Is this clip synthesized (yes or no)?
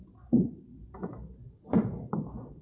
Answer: yes